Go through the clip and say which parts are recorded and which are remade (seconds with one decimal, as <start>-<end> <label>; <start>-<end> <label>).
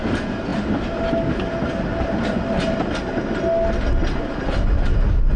0.0-5.4 recorded